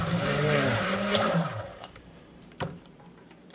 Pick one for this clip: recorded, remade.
remade